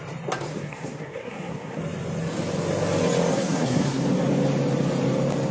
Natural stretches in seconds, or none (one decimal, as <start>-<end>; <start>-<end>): 0.0-0.5; 1.8-3.3; 4.0-5.5

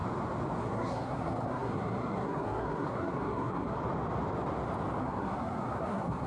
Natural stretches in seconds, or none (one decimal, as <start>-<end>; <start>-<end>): 0.0-0.6; 3.8-5.0